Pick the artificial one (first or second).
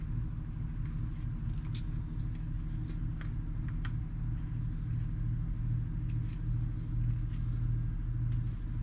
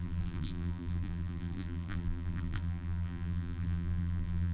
second